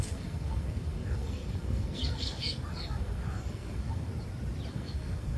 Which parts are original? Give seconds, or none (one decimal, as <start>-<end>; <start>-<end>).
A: 4.1-4.7

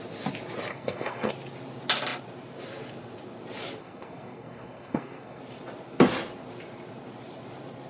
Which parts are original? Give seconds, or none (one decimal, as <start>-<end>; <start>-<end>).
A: 0.0-0.7; 1.3-3.8; 5.4-7.9

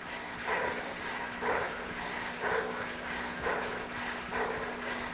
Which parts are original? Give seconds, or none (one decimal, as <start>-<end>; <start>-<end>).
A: 0.0-0.4; 3.5-4.3